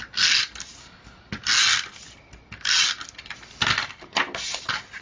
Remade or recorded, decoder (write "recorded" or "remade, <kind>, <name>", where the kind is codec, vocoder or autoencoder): recorded